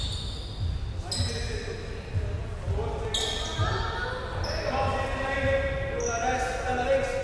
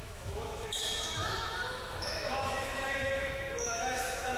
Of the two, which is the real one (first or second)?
first